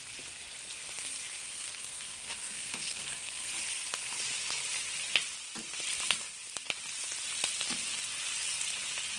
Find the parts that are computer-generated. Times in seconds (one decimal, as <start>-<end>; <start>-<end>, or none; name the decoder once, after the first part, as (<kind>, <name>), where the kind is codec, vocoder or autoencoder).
1.4-3.5 (codec, SNAC)